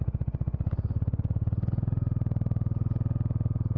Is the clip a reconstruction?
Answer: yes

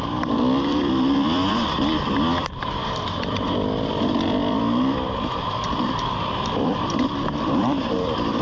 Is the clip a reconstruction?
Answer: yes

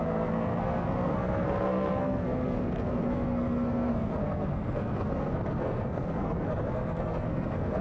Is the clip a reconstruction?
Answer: yes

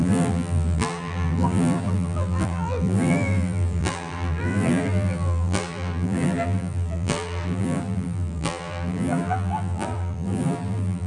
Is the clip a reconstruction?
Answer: yes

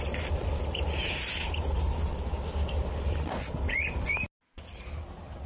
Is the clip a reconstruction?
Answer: no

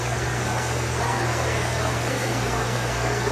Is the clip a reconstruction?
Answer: yes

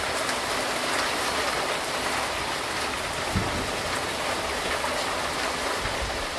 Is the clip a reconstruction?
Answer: no